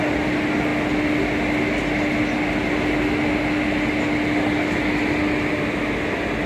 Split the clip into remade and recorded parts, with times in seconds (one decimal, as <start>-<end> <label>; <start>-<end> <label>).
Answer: 0.0-6.5 recorded